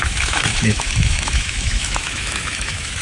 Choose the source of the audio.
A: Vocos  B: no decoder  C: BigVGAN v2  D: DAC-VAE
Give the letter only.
D